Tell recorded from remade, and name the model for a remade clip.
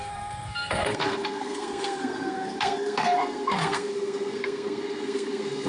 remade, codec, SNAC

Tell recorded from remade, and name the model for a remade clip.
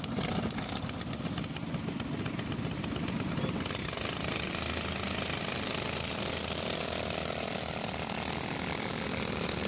recorded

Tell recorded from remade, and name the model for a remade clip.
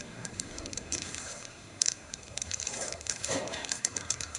remade, codec, SNAC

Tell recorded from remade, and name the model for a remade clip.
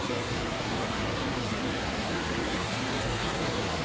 remade, codec, SNAC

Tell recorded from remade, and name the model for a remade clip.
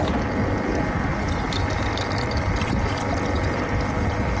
recorded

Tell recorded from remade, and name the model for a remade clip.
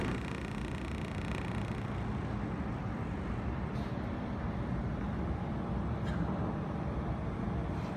recorded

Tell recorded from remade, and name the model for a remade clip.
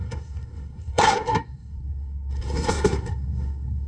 remade, codec, SNAC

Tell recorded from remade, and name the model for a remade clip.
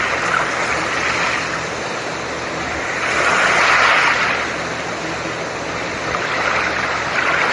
recorded